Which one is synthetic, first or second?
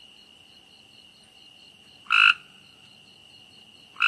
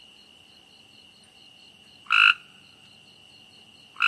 first